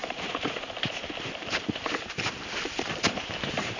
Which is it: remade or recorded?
remade